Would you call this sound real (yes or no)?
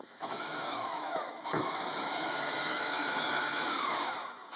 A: no